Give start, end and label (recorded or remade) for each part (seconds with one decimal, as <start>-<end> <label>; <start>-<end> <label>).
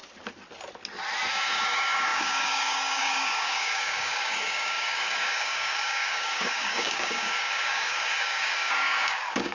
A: 0.0-1.3 recorded; 1.3-9.5 remade